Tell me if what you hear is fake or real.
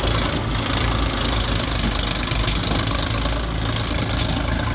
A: real